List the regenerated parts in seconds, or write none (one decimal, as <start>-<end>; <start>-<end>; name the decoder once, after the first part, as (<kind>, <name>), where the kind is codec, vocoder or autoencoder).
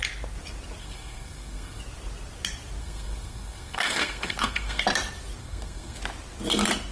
0.8-1.8 (codec, SNAC); 2.8-4.8; 5.4-6.0